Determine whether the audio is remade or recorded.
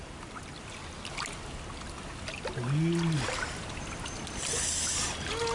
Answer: recorded